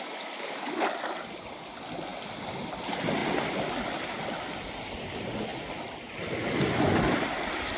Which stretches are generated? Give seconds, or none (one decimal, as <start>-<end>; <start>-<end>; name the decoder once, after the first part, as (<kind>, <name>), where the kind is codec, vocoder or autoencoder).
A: none